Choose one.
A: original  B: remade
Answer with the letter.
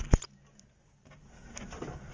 A